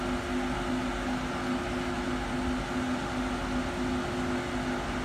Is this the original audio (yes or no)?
yes